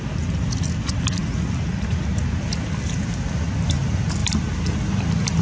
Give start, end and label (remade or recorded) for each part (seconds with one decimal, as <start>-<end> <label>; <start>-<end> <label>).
0.0-5.4 recorded